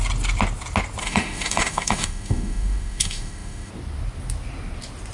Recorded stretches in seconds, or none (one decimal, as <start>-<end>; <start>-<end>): 0.0-1.0; 3.7-5.1